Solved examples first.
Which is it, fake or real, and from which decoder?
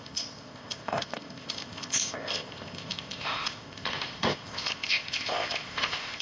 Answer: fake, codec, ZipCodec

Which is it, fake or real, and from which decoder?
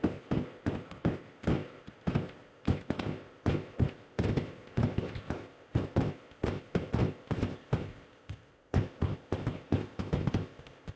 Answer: fake, codec, ZipCodec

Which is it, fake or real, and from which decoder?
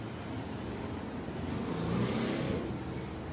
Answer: real